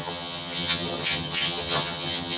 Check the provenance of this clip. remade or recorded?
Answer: remade